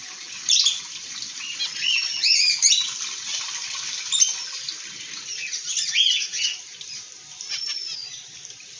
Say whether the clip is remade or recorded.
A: recorded